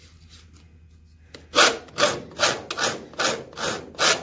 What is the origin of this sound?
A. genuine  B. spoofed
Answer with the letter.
A